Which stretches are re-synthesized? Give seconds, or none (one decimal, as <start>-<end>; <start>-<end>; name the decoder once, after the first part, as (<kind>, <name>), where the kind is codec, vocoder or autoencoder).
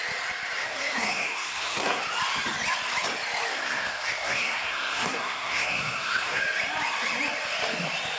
0.6-2.0 (codec, SNAC); 3.5-6.4